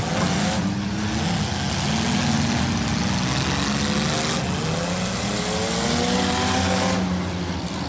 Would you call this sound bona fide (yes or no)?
yes